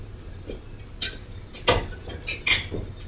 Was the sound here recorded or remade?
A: recorded